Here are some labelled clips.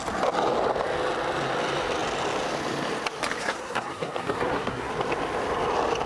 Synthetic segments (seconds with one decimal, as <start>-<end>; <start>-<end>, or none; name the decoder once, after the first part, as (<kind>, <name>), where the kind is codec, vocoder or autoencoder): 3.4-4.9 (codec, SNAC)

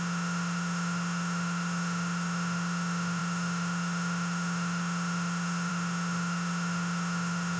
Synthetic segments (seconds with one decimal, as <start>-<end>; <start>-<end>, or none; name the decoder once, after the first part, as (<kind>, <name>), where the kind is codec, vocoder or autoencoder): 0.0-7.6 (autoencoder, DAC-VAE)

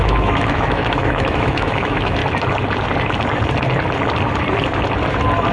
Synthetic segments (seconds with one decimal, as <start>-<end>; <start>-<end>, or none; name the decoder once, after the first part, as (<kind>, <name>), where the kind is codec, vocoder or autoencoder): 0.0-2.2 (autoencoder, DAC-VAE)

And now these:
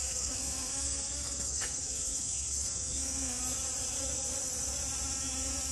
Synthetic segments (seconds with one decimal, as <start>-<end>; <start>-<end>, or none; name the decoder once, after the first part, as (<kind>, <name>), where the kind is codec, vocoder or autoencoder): 0.0-3.4 (codec, SNAC)

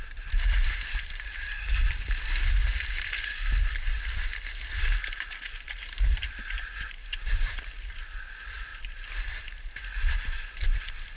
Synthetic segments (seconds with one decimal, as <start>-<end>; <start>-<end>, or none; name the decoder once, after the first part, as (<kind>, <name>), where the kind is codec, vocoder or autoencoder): 0.0-2.6 (vocoder, BigVGAN v2); 6.9-8.7

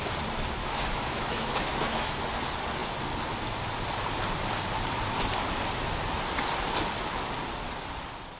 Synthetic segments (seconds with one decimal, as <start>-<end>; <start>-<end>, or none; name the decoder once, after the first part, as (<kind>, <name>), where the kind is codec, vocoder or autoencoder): 0.6-2.1 (autoencoder, DAC-VAE)

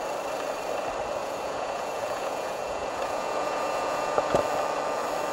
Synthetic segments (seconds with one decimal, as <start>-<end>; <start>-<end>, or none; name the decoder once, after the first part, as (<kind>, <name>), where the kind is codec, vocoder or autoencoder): 1.2-4.4 (vocoder, Vocos)